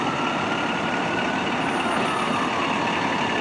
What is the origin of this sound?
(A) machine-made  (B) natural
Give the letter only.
B